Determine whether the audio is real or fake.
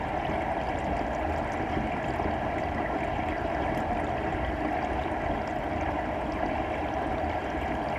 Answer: real